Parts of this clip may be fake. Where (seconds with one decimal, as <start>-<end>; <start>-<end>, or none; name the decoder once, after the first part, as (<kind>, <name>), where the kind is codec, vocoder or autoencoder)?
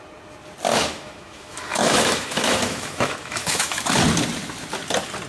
0.7-3.9 (autoencoder, DAC-VAE)